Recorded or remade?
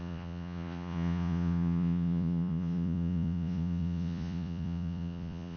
remade